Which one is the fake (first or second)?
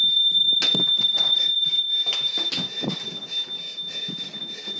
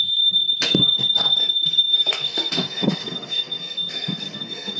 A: second